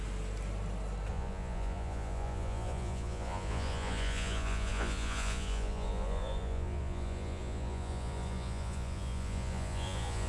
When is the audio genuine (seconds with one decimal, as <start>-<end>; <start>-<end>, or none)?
0.0-1.1